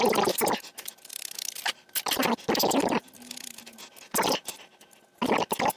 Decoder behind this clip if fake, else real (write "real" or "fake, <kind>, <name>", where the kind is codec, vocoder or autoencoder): real